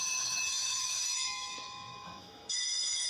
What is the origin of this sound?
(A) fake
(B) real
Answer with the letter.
A